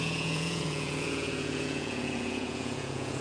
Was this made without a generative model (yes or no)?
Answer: no